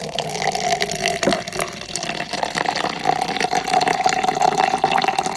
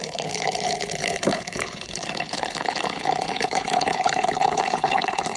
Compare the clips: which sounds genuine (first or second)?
first